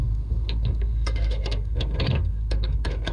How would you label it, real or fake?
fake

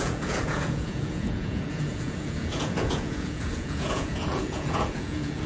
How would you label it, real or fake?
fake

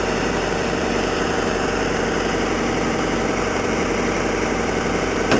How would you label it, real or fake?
fake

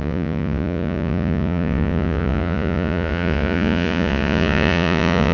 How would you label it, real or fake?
fake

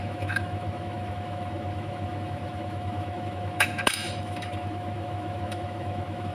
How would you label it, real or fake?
fake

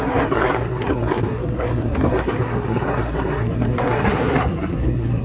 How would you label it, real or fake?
fake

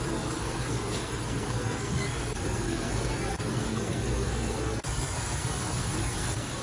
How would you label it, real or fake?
fake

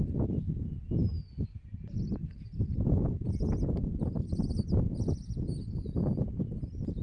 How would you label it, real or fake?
real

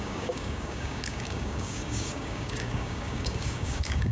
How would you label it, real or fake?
fake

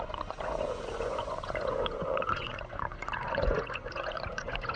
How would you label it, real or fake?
fake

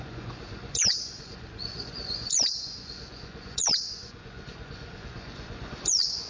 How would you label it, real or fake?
fake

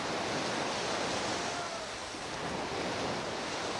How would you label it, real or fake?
real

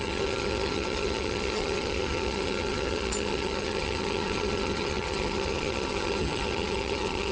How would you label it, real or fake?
fake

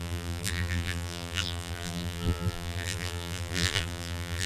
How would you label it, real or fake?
fake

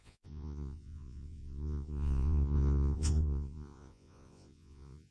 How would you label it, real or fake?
fake